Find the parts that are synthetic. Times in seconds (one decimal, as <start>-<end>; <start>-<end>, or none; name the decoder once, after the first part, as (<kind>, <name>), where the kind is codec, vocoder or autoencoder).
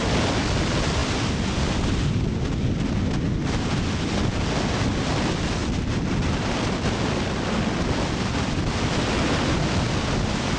none